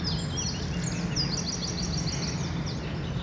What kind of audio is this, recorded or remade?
recorded